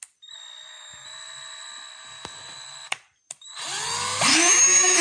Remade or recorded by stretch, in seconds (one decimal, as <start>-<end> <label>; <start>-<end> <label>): 0.0-4.3 recorded; 4.3-5.0 remade